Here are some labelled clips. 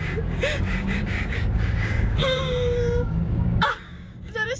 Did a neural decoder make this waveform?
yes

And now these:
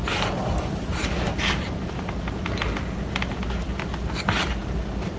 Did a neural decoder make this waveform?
no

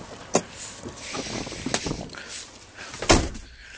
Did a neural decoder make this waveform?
no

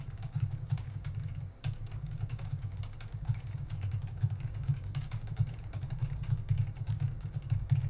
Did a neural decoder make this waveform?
yes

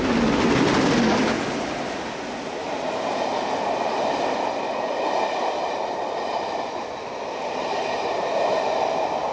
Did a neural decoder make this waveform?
no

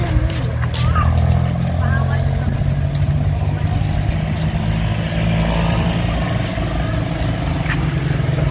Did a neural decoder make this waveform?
no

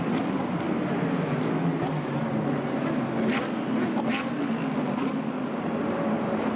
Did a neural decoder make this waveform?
no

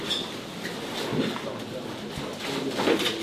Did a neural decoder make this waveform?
no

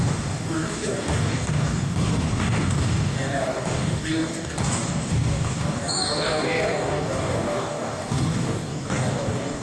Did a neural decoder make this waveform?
yes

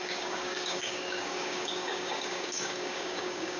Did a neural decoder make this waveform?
yes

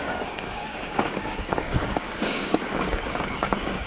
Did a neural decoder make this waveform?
yes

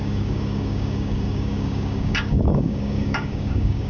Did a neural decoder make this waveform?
yes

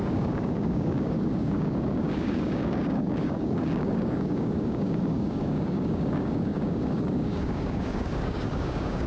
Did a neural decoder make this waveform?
yes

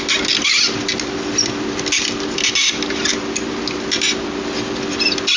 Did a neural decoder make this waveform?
no